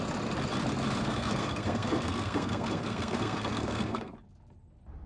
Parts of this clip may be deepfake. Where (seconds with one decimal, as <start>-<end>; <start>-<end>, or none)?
1.0-4.1